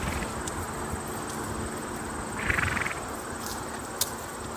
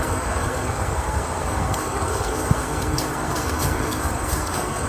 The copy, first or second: second